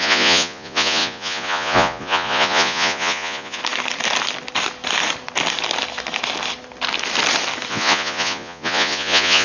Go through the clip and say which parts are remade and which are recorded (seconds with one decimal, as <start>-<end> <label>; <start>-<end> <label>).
0.0-3.6 remade; 3.6-7.7 recorded; 7.7-9.4 remade